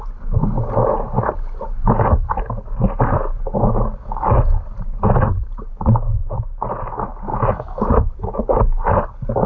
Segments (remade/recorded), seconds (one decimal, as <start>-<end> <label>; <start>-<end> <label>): 0.0-7.3 recorded; 7.3-8.1 remade; 8.1-9.5 recorded